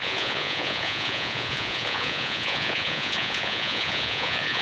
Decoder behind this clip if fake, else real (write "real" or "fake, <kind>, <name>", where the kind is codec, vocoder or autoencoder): fake, vocoder, Vocos